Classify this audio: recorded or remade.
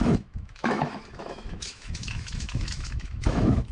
remade